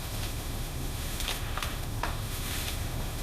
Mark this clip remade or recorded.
remade